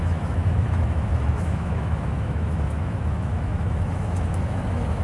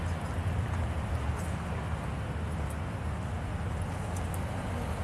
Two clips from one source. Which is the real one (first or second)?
second